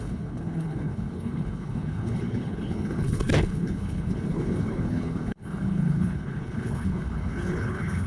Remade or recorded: remade